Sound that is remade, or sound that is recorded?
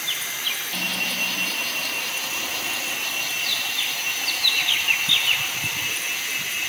recorded